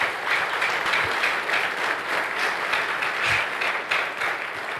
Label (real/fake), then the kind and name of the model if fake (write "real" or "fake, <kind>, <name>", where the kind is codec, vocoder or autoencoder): real